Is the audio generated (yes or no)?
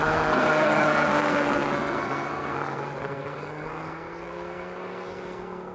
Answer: yes